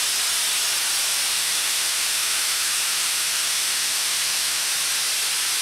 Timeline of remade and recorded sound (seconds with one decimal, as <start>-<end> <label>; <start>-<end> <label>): 0.0-1.3 recorded; 1.3-4.7 remade; 4.7-5.6 recorded

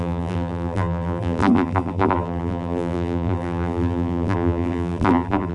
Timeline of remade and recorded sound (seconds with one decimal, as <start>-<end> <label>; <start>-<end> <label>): 0.0-5.5 remade